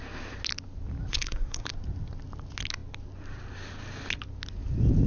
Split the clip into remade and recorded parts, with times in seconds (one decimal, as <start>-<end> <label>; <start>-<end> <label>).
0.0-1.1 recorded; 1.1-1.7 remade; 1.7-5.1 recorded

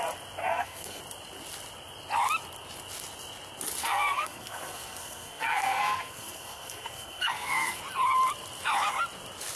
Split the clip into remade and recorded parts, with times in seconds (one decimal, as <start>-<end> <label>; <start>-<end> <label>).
0.0-0.4 recorded; 0.4-1.0 remade; 1.0-3.8 recorded; 3.8-7.8 remade; 7.8-9.6 recorded

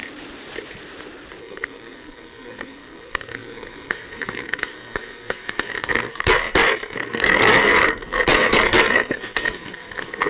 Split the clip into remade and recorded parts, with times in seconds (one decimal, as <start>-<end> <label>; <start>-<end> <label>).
0.0-1.4 recorded; 1.4-10.3 remade

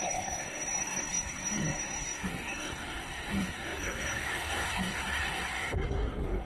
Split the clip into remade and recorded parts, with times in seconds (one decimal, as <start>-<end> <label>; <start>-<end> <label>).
0.0-6.4 remade

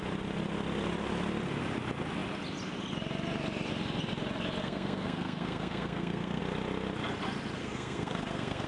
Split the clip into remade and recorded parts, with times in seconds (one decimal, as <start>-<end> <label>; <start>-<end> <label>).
0.0-4.6 recorded; 4.6-6.4 remade; 6.4-7.6 recorded; 7.6-8.7 remade